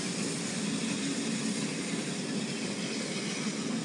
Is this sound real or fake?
real